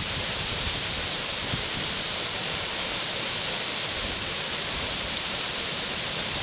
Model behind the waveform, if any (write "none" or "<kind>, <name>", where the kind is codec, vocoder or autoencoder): vocoder, BigVGAN v2